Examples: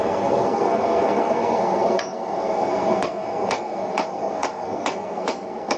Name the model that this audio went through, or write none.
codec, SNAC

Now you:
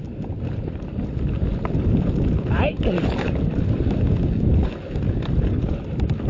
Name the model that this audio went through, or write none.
none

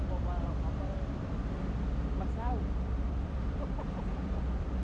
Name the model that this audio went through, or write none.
vocoder, BigVGAN v2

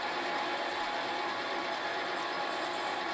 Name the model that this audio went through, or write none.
none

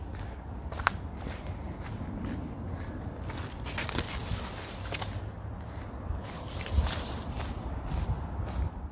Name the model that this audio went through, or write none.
none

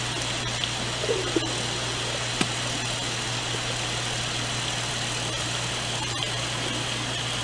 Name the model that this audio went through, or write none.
none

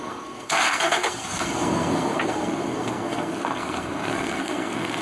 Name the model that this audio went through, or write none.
codec, SNAC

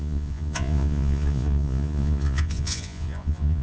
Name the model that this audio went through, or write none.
vocoder, Vocos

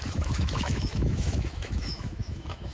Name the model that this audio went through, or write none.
autoencoder, DAC-VAE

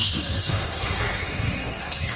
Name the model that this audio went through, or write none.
codec, SNAC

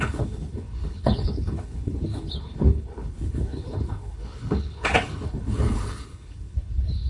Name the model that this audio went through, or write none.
codec, HILCodec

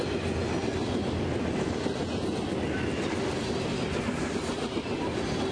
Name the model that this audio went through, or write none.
none